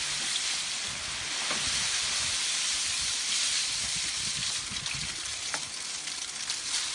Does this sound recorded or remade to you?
recorded